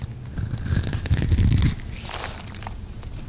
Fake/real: real